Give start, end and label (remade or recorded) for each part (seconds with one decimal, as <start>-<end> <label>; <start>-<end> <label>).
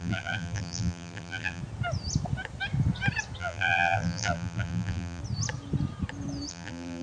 0.0-1.6 remade; 1.6-3.4 recorded; 3.4-5.2 remade; 5.2-6.5 recorded; 6.5-7.0 remade